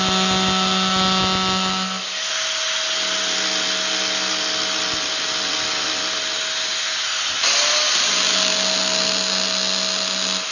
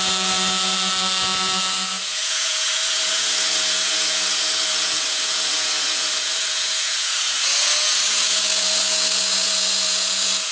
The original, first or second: first